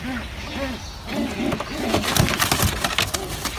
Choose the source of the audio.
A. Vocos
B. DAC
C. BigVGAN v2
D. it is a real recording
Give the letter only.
C